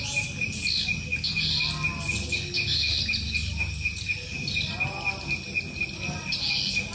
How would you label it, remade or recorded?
recorded